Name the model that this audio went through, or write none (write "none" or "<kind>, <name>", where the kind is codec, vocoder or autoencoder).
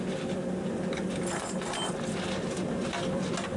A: none